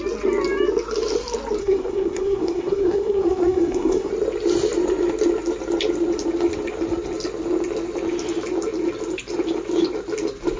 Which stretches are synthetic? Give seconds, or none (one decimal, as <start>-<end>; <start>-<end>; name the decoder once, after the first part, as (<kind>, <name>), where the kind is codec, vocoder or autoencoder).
1.6-4.1 (codec, SNAC)